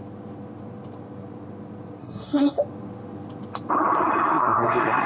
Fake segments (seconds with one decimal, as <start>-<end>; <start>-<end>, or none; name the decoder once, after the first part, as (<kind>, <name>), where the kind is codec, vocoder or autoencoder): 2.0-2.6 (codec, SNAC); 4.3-5.1